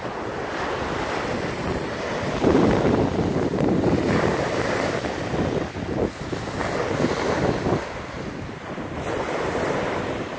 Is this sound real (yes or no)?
yes